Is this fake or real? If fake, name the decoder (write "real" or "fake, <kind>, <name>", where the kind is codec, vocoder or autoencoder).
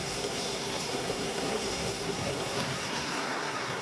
fake, codec, SNAC